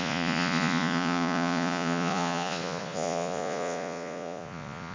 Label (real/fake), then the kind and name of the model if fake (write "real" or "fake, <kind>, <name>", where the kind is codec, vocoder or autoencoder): fake, vocoder, Vocos